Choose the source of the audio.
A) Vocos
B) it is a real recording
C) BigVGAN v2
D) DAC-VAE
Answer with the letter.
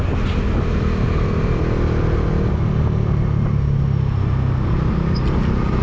B